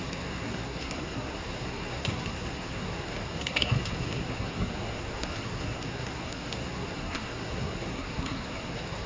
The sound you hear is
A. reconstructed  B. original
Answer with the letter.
A